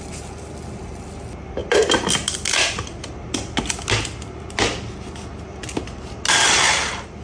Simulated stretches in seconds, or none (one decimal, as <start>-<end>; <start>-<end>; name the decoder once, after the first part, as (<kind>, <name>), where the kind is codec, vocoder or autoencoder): none